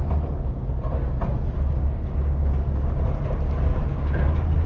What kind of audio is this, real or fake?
real